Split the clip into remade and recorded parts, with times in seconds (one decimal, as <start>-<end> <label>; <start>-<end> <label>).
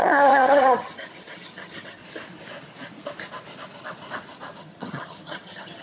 0.0-2.0 remade; 2.0-4.6 recorded; 4.6-5.8 remade